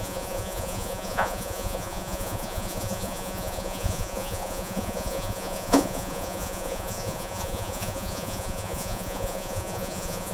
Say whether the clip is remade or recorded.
remade